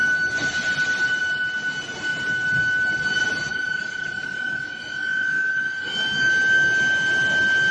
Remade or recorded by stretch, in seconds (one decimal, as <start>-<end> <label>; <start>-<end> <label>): 0.0-3.5 recorded; 3.5-6.3 remade; 6.3-7.7 recorded